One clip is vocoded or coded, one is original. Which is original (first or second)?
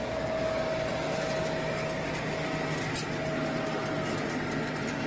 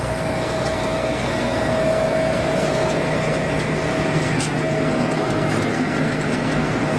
first